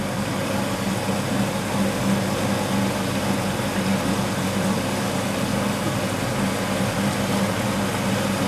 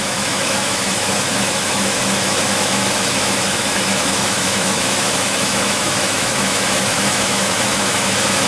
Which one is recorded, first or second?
first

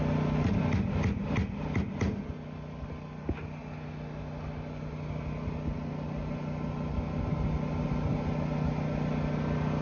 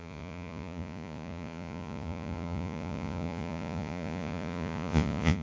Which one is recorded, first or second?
first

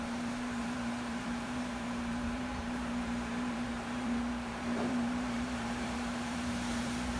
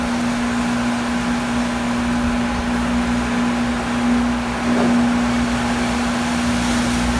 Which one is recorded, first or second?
second